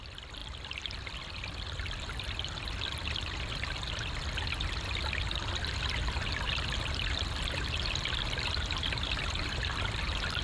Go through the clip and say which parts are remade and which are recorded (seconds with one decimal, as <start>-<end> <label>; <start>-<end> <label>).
0.0-10.4 recorded